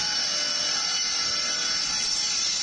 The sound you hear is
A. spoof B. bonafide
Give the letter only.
B